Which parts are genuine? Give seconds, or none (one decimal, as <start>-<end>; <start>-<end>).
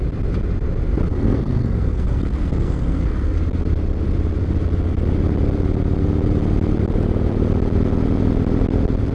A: 0.0-1.1; 3.4-9.1